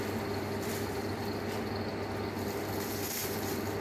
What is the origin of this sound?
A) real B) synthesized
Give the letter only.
A